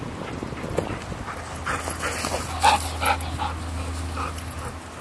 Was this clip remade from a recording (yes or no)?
no